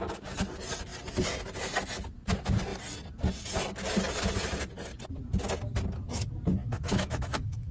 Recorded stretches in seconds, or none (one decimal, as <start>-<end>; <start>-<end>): 0.0-6.6